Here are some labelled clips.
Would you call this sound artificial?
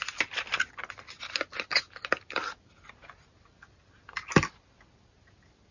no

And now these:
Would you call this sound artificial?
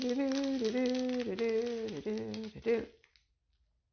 no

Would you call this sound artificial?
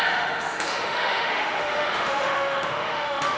yes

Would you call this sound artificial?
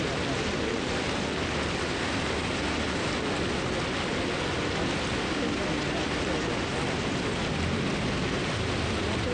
no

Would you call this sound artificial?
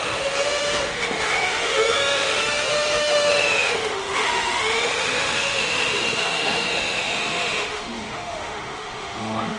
yes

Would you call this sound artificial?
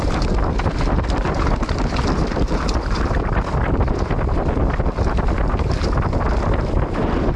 no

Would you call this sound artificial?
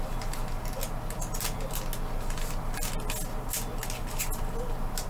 no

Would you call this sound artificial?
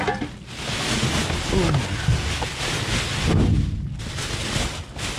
no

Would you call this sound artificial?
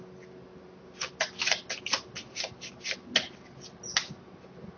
no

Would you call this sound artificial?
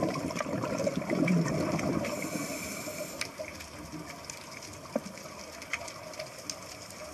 no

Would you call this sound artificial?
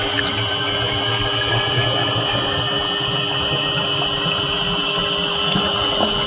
no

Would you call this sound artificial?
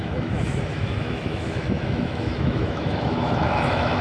yes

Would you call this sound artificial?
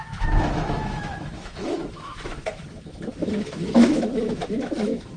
yes